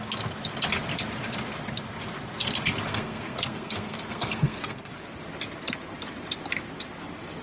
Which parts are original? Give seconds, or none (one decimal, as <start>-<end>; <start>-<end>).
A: 0.0-2.9; 4.9-7.4